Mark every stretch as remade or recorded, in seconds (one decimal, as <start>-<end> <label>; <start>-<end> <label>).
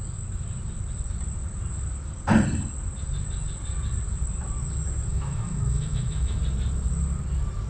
0.0-5.1 recorded; 5.1-6.4 remade; 6.4-7.7 recorded